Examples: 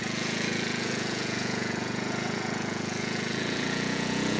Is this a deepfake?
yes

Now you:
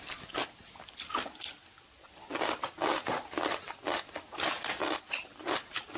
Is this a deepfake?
no